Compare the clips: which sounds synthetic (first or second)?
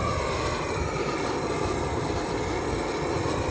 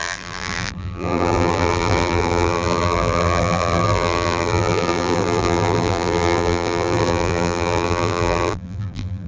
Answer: second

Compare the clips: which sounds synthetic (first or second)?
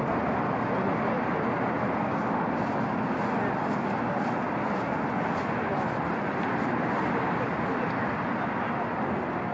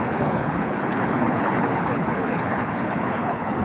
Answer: second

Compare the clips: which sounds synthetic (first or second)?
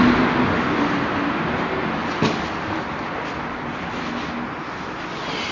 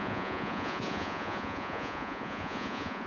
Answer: second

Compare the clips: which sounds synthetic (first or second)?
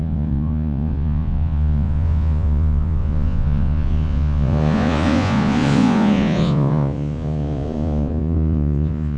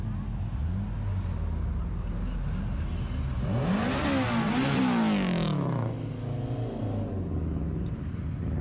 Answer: first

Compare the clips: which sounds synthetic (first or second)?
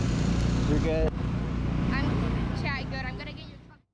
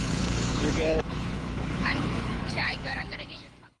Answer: second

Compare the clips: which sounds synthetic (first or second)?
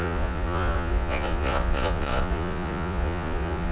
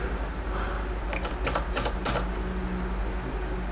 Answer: first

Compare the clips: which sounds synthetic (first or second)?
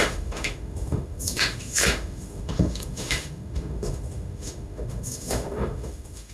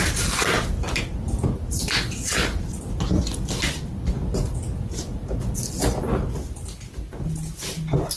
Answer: first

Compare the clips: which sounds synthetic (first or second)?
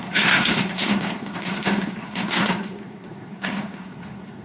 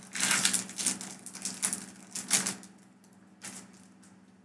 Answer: first